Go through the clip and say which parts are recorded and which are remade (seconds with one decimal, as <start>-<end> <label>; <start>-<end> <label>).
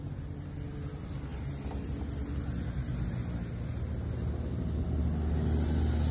0.0-6.1 recorded